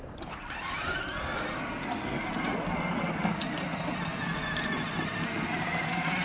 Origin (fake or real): real